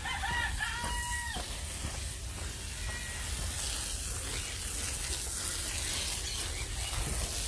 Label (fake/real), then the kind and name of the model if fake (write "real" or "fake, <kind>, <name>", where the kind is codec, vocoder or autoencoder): real